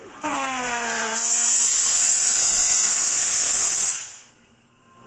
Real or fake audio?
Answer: fake